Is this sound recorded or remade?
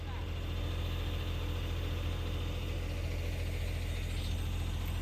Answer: recorded